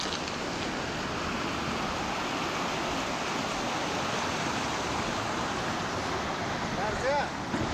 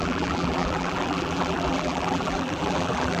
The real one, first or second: first